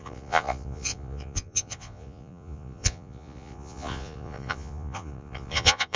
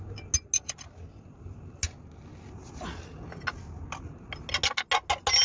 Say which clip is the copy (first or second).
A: first